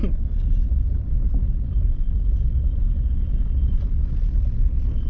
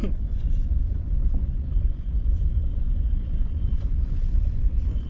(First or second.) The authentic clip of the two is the first